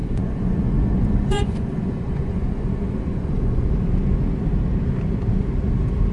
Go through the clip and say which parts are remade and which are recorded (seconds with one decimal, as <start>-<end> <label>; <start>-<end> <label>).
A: 0.0-3.7 remade; 3.7-6.1 recorded